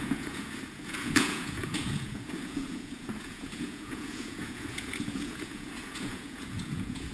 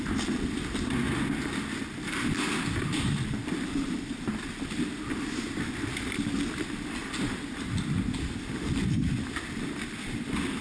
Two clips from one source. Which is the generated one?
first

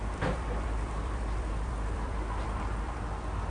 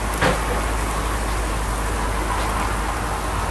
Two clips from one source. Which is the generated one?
first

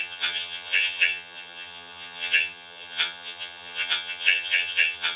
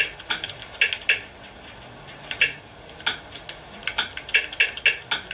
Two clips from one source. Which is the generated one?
first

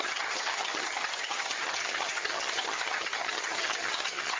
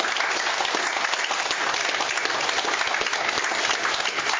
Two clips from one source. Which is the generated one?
first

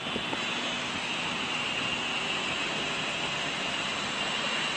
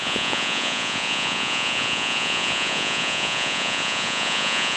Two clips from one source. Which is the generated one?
second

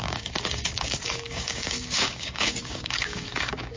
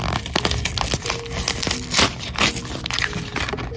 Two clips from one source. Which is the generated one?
first